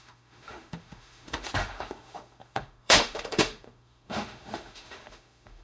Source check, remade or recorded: remade